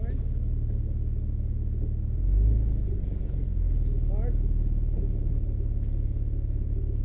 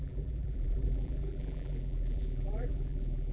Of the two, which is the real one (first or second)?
first